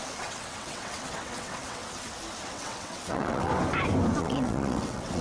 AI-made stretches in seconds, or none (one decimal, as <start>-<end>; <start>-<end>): 0.0-1.8; 2.4-3.5; 4.2-5.2